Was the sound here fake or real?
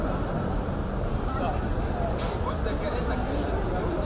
real